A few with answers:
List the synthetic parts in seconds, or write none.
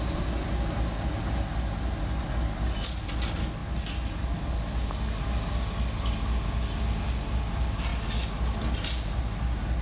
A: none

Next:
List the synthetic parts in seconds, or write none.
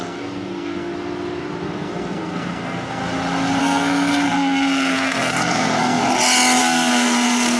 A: 0.0-0.9; 1.6-3.0; 3.6-6.0; 6.6-7.6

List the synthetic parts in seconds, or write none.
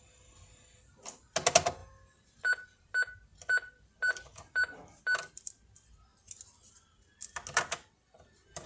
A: 1.8-2.9; 3.3-5.0